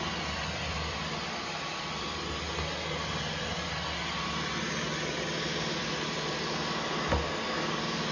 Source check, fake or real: real